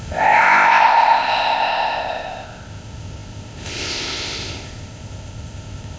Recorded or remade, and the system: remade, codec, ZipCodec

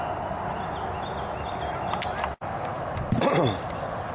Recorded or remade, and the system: recorded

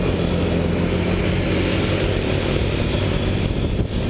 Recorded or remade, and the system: recorded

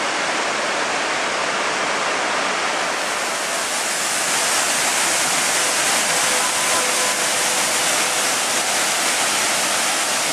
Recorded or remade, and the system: recorded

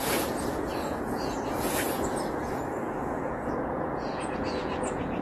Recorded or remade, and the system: remade, vocoder, Vocos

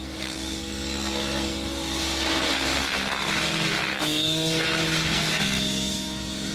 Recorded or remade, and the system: remade, codec, SNAC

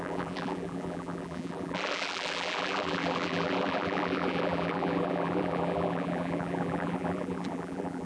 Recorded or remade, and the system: remade, vocoder, BigVGAN v2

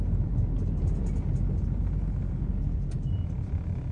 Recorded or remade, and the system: recorded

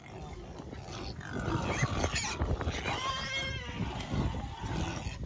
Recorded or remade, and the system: recorded